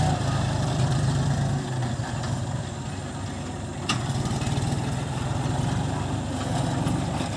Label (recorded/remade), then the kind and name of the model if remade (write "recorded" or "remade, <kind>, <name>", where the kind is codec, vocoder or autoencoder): recorded